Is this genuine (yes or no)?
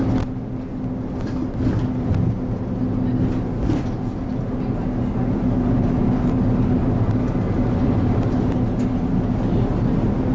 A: yes